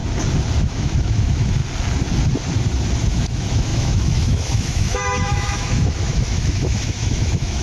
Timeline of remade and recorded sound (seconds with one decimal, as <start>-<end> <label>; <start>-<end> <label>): 0.0-0.6 recorded; 0.6-1.6 remade; 1.6-3.1 recorded; 3.1-7.6 remade